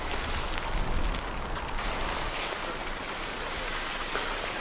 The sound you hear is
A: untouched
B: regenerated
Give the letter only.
A